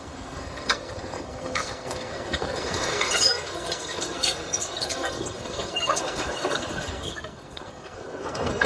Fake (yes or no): yes